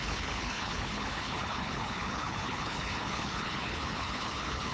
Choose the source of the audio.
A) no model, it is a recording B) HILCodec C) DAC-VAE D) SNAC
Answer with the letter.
B